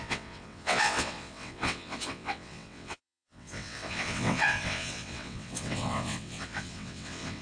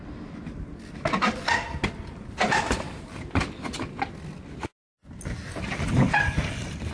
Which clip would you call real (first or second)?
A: second